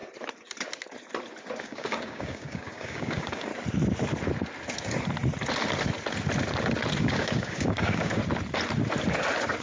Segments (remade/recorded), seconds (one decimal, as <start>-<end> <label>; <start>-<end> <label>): 0.0-1.6 recorded; 1.6-3.5 remade; 3.5-7.0 recorded; 7.0-8.2 remade; 8.2-9.6 recorded